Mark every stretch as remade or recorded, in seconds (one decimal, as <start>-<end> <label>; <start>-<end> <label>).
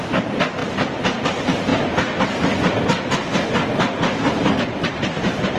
0.0-1.7 remade; 1.7-4.9 recorded; 4.9-5.6 remade